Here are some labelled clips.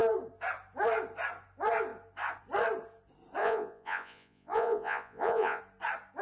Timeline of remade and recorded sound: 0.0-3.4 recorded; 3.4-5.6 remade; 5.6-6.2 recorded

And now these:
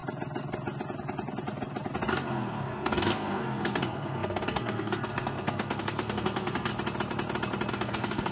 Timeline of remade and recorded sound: 0.0-2.1 recorded; 2.1-6.7 remade; 6.7-7.7 recorded; 7.7-8.3 remade

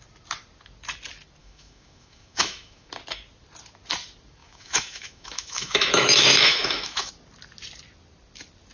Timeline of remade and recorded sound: 0.0-1.4 recorded; 1.4-2.9 remade; 2.9-4.4 recorded; 4.4-7.1 remade; 7.1-8.7 recorded

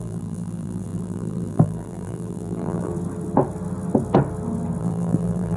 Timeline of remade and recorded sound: 0.0-2.9 remade; 2.9-4.8 recorded; 4.8-5.6 remade

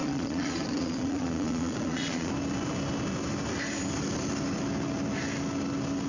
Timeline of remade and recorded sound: 0.0-2.3 remade; 2.3-6.1 recorded

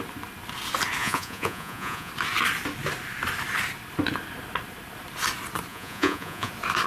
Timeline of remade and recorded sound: 0.0-1.0 recorded; 1.0-2.1 remade; 2.1-5.7 recorded; 5.7-6.5 remade; 6.5-6.9 recorded